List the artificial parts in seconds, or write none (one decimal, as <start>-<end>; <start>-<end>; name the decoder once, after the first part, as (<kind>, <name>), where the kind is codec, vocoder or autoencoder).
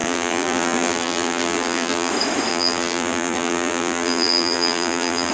0.0-2.1 (vocoder, BigVGAN v2); 2.5-5.3